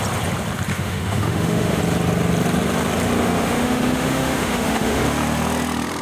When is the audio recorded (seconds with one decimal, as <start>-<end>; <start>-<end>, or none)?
0.0-0.7; 1.8-3.2; 5.0-6.0